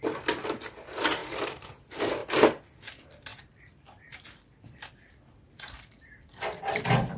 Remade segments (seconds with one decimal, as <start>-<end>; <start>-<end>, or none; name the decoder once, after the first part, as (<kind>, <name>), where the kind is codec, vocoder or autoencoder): none

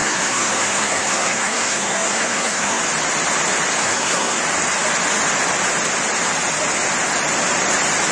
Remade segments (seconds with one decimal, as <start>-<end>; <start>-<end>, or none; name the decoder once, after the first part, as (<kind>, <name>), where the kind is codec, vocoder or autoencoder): 0.0-2.8 (codec, SNAC); 3.8-4.4